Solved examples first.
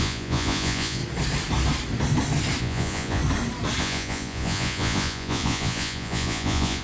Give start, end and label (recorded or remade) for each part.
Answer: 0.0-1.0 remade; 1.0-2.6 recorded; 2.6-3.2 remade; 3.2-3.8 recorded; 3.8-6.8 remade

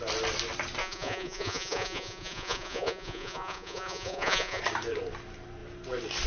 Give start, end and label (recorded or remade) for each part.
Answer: 0.0-0.8 recorded; 0.8-4.6 remade; 4.6-6.3 recorded

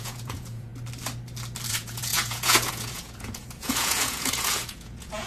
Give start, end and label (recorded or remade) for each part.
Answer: 0.0-0.7 remade; 0.7-1.7 recorded; 1.7-5.3 remade

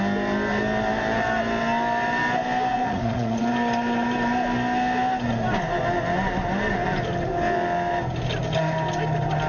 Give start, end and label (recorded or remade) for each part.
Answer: 0.0-2.7 recorded; 2.7-3.4 remade; 3.4-9.5 recorded

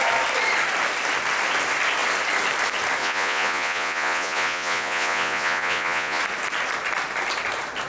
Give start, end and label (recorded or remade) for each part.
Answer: 0.0-3.0 recorded; 3.0-6.2 remade; 6.2-7.9 recorded

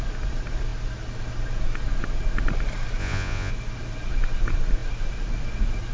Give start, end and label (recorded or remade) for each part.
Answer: 0.0-3.0 recorded; 3.0-3.5 remade; 3.5-5.9 recorded

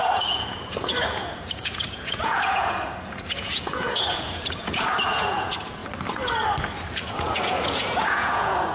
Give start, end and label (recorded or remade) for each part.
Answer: 0.0-5.8 remade; 5.8-7.0 recorded; 7.0-8.7 remade